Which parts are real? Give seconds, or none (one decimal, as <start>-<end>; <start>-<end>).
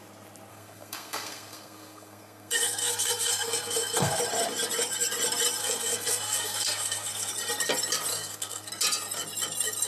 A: 0.0-0.5; 4.2-5.6; 7.3-8.1; 8.7-9.9